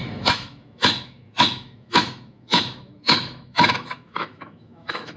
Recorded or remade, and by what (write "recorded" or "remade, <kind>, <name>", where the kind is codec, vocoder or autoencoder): remade, autoencoder, DAC-VAE